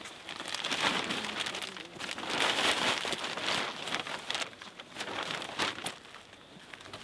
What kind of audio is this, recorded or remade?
recorded